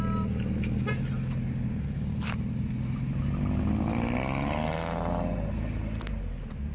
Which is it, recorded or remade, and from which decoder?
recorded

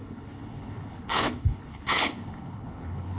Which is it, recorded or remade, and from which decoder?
remade, codec, HILCodec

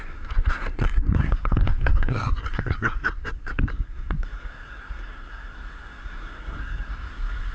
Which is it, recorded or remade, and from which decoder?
remade, codec, SNAC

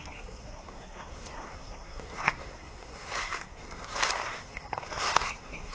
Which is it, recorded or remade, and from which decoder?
remade, codec, SNAC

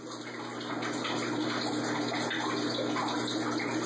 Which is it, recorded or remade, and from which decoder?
recorded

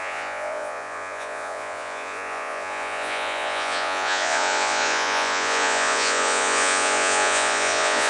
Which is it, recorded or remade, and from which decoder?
remade, vocoder, Vocos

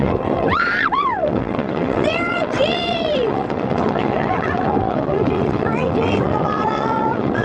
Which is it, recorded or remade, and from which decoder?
remade, vocoder, WaveNeXt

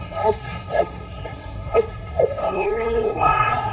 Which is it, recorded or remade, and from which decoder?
remade, codec, SNAC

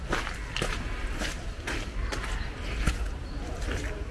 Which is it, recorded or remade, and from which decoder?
recorded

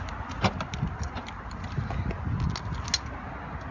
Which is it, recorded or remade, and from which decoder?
recorded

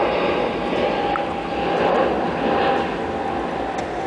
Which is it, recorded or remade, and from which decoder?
recorded